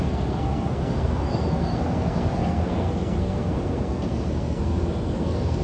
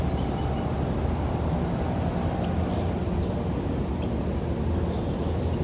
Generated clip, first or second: first